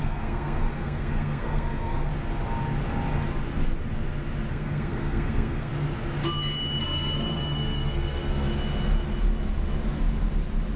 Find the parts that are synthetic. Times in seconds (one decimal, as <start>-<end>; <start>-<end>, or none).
0.0-2.1; 4.5-5.7; 6.8-8.5